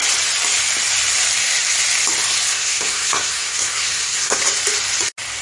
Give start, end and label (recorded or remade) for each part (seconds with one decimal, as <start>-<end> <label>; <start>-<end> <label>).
0.0-2.5 recorded; 2.5-4.4 remade; 4.4-5.4 recorded